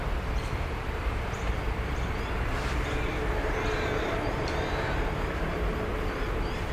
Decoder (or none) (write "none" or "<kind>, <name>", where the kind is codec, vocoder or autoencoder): vocoder, BigVGAN v2